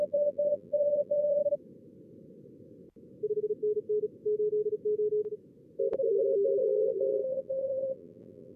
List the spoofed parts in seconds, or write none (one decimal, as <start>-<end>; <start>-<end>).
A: 0.0-1.4; 6.6-8.6